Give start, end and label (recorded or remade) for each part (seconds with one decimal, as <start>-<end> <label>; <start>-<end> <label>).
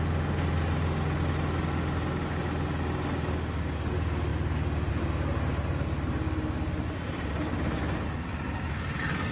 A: 0.0-9.3 recorded